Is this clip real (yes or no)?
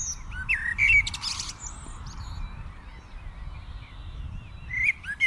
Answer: yes